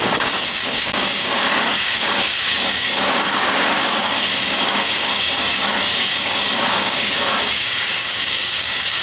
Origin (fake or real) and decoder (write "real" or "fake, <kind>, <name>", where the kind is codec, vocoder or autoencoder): fake, codec, DAC